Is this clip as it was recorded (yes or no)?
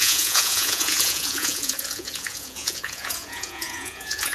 no